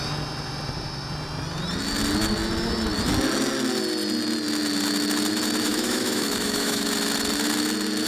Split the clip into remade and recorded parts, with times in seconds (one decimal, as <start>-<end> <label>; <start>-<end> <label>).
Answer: 0.0-5.7 recorded; 5.7-6.9 remade; 6.9-8.1 recorded